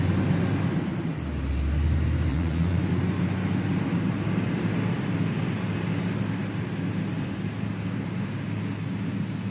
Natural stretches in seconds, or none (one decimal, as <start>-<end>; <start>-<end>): 0.0-2.3; 2.9-9.5